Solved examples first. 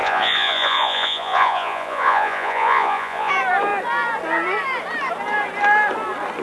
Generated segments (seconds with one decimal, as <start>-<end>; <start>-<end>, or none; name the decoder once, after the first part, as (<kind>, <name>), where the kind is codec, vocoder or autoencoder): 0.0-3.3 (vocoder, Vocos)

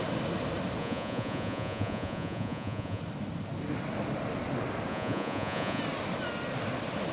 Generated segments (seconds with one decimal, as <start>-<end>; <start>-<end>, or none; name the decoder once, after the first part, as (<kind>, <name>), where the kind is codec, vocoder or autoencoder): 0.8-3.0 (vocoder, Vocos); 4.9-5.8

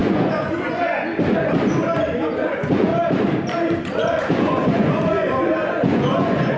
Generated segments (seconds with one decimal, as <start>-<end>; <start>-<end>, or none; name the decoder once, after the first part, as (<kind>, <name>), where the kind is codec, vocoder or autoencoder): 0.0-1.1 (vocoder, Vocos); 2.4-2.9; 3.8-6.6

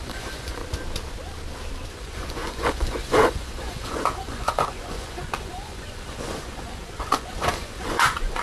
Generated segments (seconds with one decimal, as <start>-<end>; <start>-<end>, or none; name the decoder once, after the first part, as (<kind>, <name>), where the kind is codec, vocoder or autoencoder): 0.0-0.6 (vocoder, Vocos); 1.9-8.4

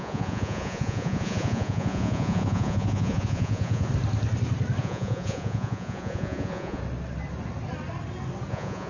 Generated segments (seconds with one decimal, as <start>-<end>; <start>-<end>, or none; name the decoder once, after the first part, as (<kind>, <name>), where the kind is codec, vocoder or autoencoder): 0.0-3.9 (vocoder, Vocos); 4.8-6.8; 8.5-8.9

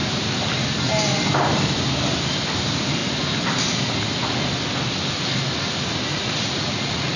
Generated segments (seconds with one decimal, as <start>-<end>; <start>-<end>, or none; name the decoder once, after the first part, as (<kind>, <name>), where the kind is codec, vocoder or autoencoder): 6.1-7.2 (vocoder, Vocos)